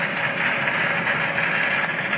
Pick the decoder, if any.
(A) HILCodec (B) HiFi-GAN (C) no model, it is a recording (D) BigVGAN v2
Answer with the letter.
C